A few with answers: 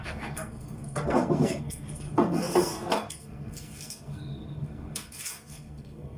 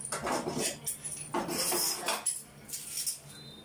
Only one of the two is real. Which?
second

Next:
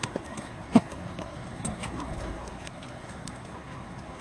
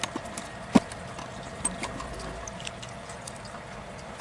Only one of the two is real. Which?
second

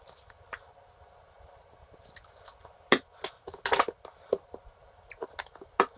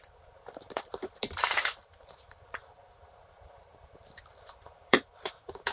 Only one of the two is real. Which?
first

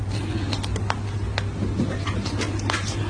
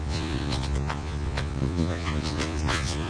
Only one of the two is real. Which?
first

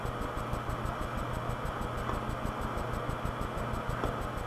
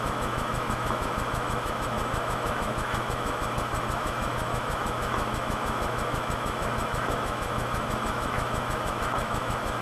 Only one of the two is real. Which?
first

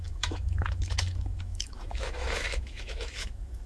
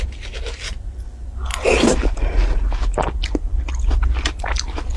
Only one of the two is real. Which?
second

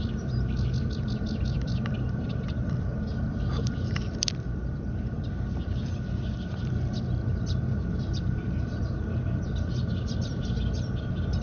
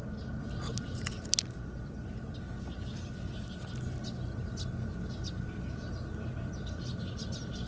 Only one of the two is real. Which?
second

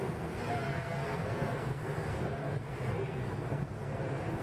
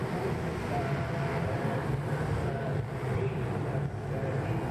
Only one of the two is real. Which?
second